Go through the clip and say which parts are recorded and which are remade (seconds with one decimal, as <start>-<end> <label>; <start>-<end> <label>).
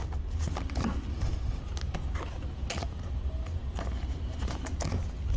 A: 0.0-1.1 recorded; 1.1-1.6 remade; 1.6-5.4 recorded